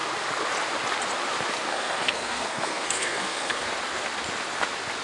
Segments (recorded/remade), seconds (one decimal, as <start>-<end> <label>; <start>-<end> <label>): 0.0-1.7 recorded; 1.7-3.7 remade; 3.7-5.0 recorded